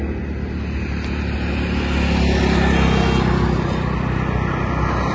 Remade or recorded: recorded